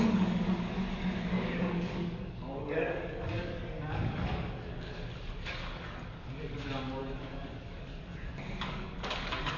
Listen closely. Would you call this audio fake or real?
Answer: fake